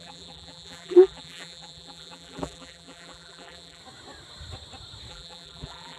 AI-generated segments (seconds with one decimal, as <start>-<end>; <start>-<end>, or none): 0.0-3.8; 5.1-6.0